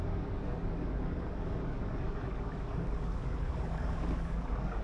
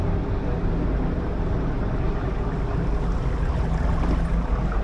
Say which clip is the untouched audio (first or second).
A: second